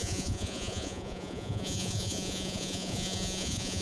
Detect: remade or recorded remade